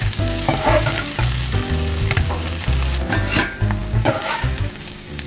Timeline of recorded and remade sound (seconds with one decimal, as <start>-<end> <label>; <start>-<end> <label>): 0.0-1.1 remade; 1.1-3.4 recorded; 3.4-5.3 remade